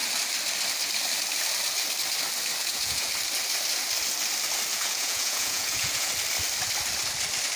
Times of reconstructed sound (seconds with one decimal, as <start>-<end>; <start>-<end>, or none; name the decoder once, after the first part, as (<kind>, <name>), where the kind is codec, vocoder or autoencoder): 2.6-3.1 (vocoder, Vocos); 4.7-6.1